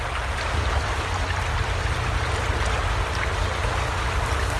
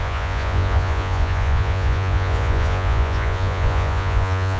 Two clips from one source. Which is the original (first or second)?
first